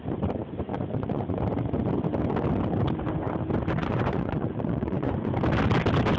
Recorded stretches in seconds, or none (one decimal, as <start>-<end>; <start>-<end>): 0.0-0.7; 1.4-3.8; 5.3-6.2